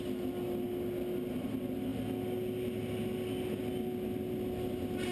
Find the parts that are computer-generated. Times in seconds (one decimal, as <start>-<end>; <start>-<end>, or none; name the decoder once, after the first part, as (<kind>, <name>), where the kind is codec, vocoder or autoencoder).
none